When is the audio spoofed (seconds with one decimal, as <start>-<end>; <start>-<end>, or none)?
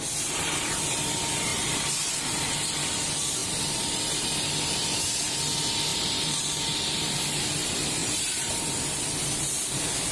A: 1.5-2.4; 3.4-4.0; 5.9-7.1; 8.0-8.8